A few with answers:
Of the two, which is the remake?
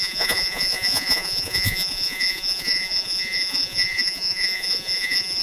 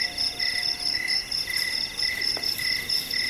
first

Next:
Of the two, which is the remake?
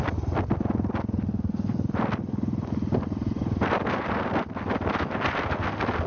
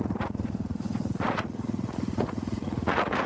second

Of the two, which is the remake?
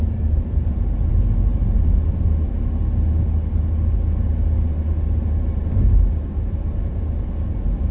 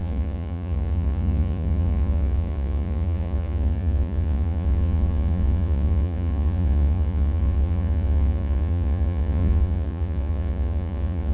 second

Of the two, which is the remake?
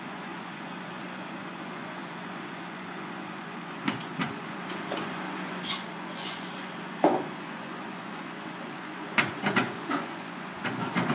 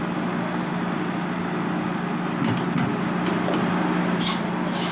first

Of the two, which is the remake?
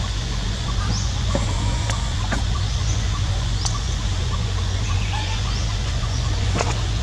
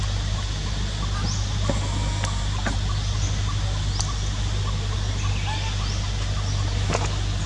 first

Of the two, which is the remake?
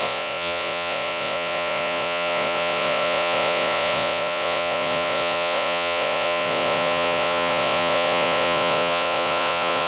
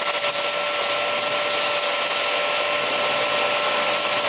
first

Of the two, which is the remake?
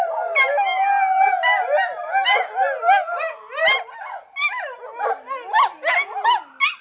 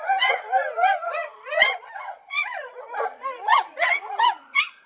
second